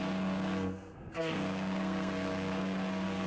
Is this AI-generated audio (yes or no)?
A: yes